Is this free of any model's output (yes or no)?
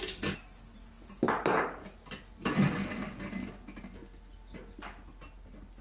yes